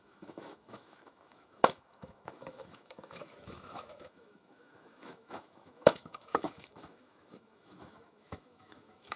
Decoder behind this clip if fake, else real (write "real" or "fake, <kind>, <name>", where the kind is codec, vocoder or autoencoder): fake, autoencoder, DAC-VAE